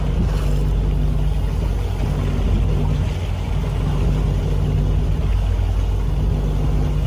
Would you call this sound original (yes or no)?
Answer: yes